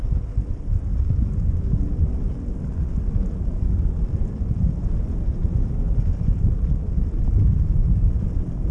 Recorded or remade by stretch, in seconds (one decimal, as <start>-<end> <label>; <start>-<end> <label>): 0.0-8.7 recorded